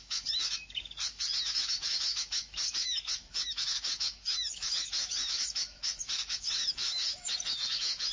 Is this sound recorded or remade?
remade